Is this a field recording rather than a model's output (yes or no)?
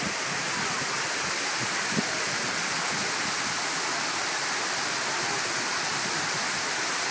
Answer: yes